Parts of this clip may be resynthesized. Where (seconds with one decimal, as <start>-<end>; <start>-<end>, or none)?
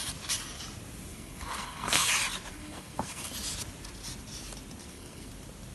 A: 1.1-2.1; 2.5-3.3; 4.8-5.3